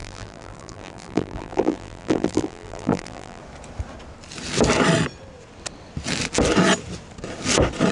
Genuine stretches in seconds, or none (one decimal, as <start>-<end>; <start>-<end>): 3.4-7.9